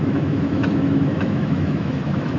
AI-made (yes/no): yes